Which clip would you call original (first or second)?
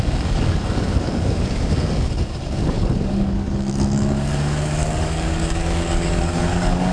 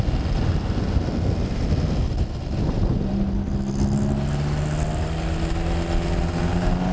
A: second